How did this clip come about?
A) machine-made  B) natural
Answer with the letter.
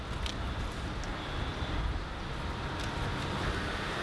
B